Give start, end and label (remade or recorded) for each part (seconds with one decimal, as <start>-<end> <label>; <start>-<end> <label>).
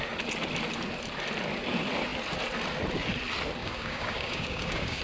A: 0.0-3.6 recorded; 3.6-5.0 remade